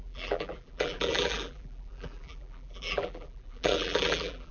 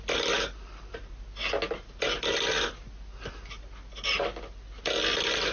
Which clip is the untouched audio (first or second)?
second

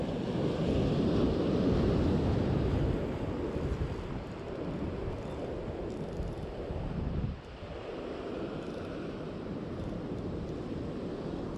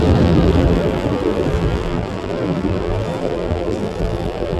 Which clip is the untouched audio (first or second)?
first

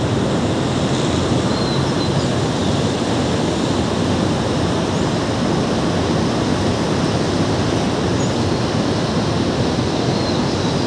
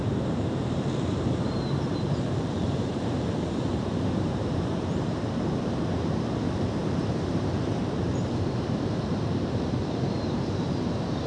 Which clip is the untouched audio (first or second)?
first